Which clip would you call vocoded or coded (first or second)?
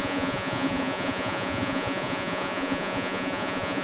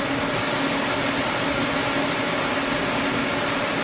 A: first